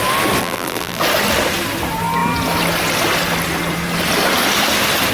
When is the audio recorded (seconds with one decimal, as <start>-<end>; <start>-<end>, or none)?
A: 0.0-0.4; 1.0-5.1